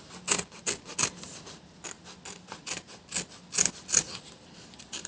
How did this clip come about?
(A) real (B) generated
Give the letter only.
A